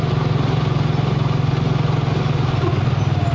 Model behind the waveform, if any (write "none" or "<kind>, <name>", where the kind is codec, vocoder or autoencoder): none